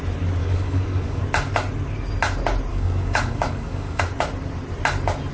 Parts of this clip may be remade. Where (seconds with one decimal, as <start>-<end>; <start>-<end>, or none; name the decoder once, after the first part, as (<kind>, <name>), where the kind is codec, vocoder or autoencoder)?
0.4-1.2 (codec, DAC); 2.7-4.0